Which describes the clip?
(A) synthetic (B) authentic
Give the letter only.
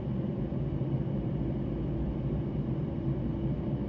B